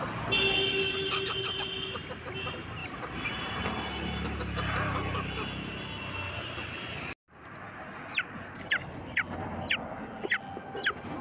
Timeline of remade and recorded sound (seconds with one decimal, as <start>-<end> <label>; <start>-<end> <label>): 0.0-2.8 recorded; 2.8-3.5 remade; 3.5-11.2 recorded